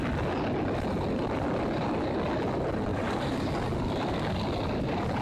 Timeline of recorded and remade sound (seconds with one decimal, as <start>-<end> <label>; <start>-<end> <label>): 0.0-2.9 recorded; 2.9-3.5 remade; 3.5-5.2 recorded